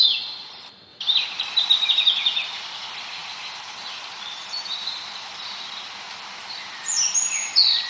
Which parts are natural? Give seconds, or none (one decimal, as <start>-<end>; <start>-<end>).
0.0-0.9; 1.9-3.2; 5.3-7.9